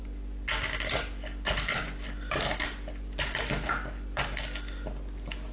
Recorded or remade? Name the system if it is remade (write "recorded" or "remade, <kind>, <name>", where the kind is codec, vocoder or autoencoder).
recorded